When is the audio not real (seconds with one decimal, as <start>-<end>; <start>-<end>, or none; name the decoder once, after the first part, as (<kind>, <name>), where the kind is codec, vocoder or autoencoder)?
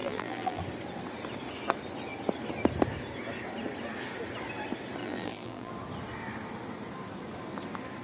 0.0-0.6 (vocoder, BigVGAN v2); 5.0-5.7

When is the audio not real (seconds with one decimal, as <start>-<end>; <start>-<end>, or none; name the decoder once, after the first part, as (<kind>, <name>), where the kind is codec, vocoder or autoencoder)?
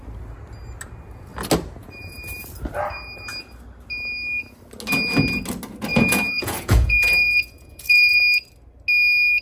5.9-8.2 (vocoder, Vocos)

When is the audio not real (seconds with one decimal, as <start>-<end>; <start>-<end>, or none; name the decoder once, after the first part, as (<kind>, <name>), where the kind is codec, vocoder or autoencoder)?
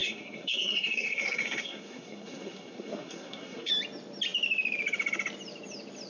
0.0-3.7 (codec, SNAC)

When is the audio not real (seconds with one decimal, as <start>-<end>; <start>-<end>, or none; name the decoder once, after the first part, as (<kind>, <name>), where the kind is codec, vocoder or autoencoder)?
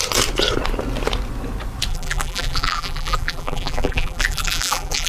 1.9-5.1 (vocoder, BigVGAN v2)